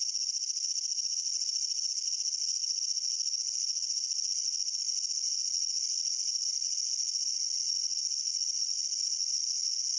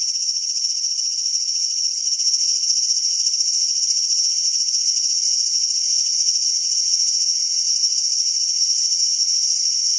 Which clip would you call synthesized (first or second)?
second